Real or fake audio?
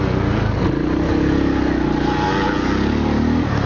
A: real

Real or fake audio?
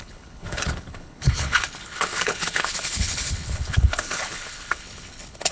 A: fake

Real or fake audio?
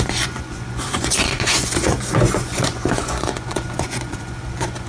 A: fake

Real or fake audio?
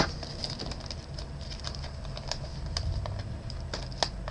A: real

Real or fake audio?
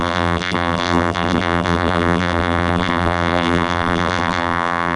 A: fake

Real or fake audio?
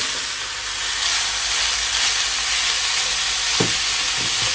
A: real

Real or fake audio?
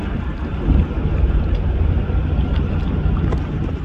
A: real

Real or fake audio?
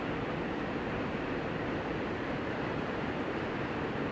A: fake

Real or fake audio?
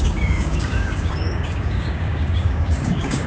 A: fake